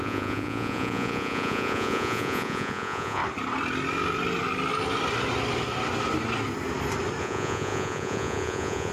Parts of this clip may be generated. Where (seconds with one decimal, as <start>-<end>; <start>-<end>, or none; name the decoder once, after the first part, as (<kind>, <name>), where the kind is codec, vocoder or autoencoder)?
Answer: 0.0-3.2 (vocoder, Vocos); 7.2-8.9